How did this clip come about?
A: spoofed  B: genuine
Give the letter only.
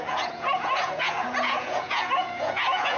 A